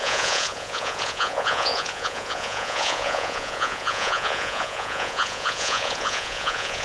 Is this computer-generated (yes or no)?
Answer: yes